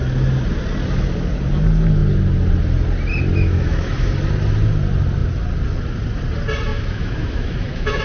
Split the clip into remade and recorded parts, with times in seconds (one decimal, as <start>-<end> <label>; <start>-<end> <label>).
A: 0.0-3.3 recorded; 3.3-4.1 remade; 4.1-6.7 recorded; 6.7-8.0 remade